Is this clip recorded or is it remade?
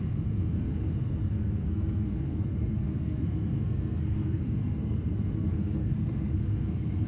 remade